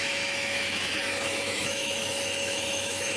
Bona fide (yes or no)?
no